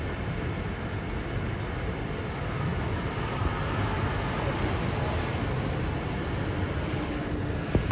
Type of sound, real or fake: real